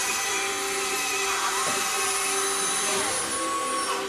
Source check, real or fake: real